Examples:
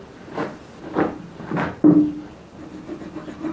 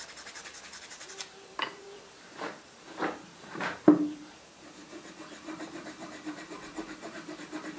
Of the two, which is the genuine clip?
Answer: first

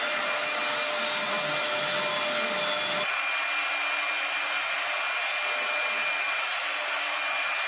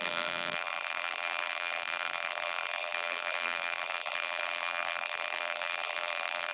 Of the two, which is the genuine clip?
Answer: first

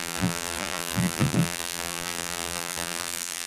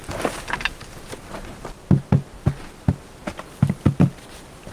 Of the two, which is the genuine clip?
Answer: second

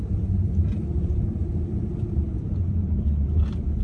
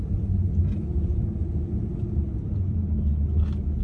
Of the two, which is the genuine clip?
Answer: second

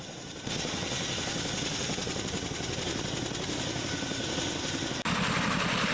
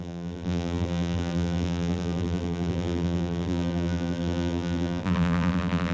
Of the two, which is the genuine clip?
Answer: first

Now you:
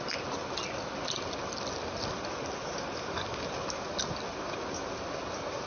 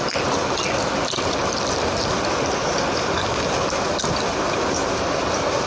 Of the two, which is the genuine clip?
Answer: first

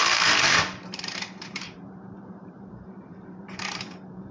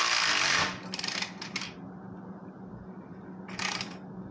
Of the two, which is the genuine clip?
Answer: second